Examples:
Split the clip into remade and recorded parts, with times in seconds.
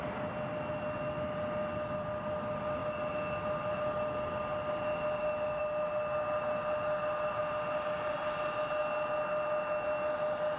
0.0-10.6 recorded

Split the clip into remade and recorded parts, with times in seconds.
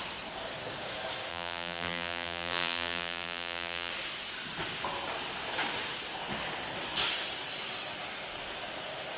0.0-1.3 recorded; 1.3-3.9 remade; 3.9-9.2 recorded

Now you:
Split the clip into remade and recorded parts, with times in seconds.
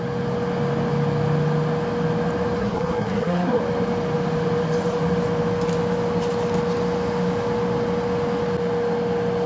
0.0-2.6 recorded; 2.6-3.6 remade; 3.6-9.5 recorded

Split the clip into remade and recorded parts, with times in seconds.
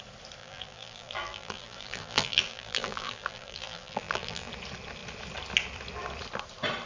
0.0-0.4 recorded; 0.4-4.5 remade; 4.5-6.9 recorded